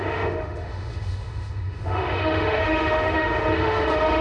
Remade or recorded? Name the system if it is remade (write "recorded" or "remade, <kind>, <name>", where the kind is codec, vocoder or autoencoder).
remade, autoencoder, DAC-VAE